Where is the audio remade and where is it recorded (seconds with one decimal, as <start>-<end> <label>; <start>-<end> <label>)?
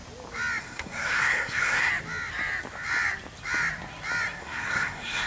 0.0-0.6 recorded; 0.6-1.9 remade; 1.9-4.4 recorded; 4.4-5.3 remade